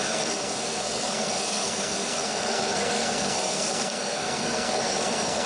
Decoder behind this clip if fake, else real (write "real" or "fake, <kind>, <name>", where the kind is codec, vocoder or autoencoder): fake, codec, SNAC